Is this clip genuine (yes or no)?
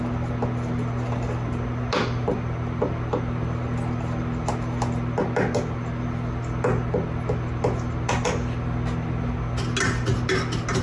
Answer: yes